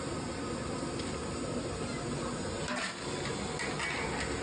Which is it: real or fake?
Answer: real